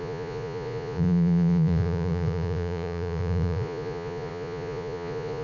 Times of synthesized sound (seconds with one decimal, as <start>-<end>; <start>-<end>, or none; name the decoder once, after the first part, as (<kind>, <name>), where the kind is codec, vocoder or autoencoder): 0.0-5.4 (vocoder, Vocos)